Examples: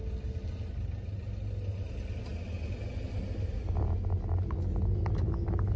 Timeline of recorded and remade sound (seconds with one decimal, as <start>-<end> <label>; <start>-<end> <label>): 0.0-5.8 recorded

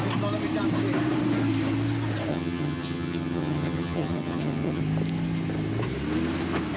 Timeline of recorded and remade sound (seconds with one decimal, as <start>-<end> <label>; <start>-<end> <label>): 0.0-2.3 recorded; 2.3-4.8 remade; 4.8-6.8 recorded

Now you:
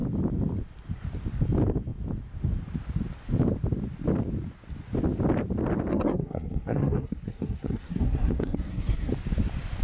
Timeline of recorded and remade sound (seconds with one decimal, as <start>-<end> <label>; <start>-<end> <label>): 0.0-5.9 recorded; 5.9-9.1 remade; 9.1-9.8 recorded

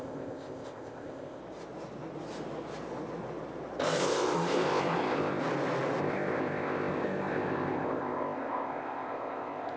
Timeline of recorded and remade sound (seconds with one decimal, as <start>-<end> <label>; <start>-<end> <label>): 0.0-1.4 remade; 1.4-3.8 recorded; 3.8-5.4 remade; 5.4-6.0 recorded; 6.0-9.8 remade

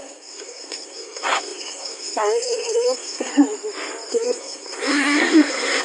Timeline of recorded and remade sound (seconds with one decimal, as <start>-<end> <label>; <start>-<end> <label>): 0.0-3.3 remade; 3.3-4.1 recorded; 4.1-5.8 remade

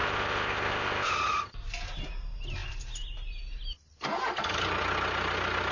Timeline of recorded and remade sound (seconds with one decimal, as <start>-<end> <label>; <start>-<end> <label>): 0.0-1.1 remade; 1.1-5.7 recorded